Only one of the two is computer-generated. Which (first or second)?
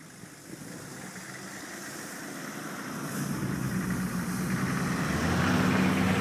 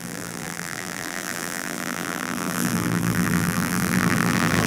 second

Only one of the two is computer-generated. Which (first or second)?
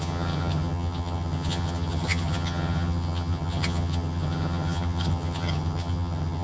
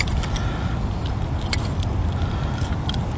first